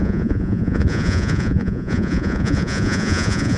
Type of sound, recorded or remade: remade